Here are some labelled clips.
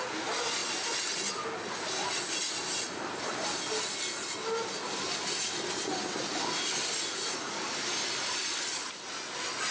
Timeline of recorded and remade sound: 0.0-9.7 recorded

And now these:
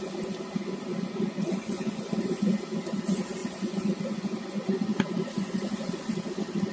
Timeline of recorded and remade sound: 0.0-0.9 recorded; 0.9-2.6 remade; 2.6-3.4 recorded; 3.4-6.0 remade; 6.0-6.7 recorded

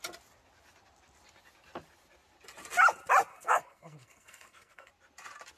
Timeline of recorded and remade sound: 0.0-3.3 recorded; 3.3-4.9 remade; 4.9-5.6 recorded

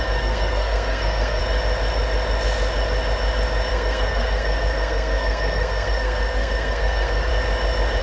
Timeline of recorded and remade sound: 0.0-1.4 remade; 1.4-3.7 recorded; 3.7-7.3 remade; 7.3-8.0 recorded

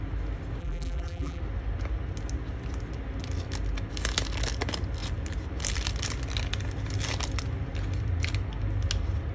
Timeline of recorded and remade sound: 0.0-0.6 recorded; 0.6-1.4 remade; 1.4-9.3 recorded

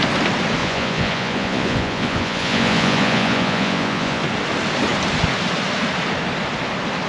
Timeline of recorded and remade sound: 0.0-0.6 recorded; 0.6-4.2 remade; 4.2-7.1 recorded

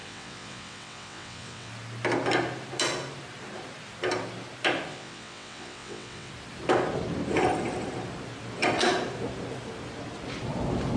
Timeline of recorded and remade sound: 0.0-1.7 remade; 1.7-4.9 recorded; 4.9-6.3 remade; 6.3-11.0 recorded